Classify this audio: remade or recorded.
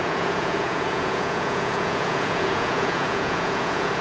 remade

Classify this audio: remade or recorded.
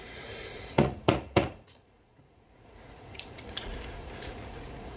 remade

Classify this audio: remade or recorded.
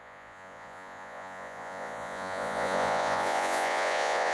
remade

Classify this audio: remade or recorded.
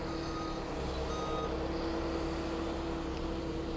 recorded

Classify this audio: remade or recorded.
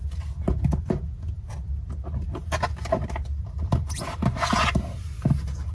recorded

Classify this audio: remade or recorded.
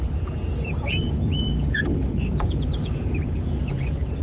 remade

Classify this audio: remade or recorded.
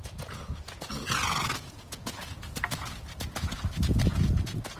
remade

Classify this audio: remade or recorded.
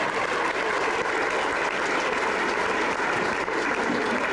recorded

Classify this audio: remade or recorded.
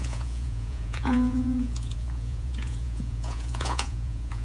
remade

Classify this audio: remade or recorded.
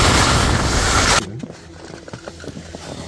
recorded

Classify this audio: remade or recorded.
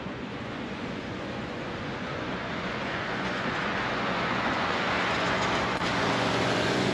remade